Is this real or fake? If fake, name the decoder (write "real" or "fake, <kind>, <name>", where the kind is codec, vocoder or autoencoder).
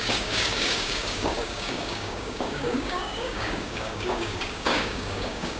fake, codec, DAC